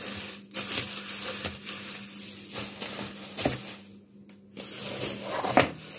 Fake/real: real